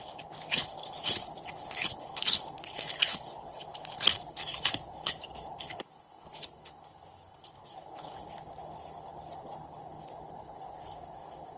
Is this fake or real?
fake